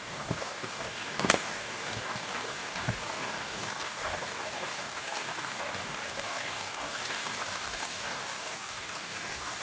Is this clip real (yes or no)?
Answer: no